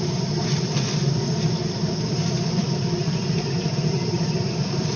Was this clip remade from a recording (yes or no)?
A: no